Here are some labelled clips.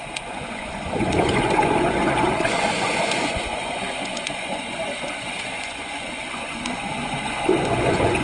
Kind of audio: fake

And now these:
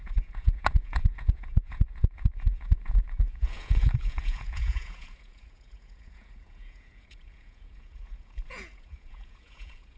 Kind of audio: fake